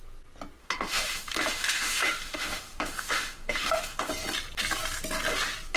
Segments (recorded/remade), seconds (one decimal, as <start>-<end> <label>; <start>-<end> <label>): 0.0-0.6 recorded; 0.6-4.1 remade; 4.1-5.8 recorded